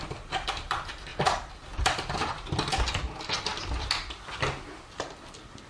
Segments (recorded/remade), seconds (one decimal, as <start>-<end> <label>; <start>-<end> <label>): 0.0-1.1 remade; 1.1-1.9 recorded; 1.9-3.5 remade; 3.5-5.1 recorded; 5.1-5.7 remade